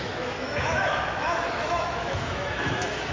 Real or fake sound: fake